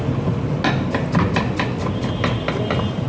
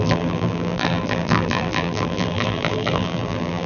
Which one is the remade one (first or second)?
second